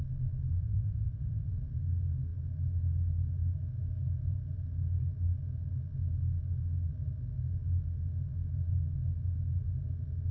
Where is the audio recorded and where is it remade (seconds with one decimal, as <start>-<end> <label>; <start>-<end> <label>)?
0.0-0.6 recorded; 0.6-1.5 remade; 1.5-10.3 recorded